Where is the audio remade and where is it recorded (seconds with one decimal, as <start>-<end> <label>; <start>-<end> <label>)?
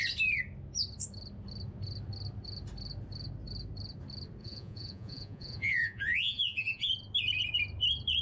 0.0-4.4 recorded; 4.4-6.9 remade; 6.9-8.2 recorded